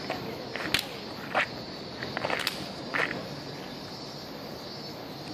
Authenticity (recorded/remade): recorded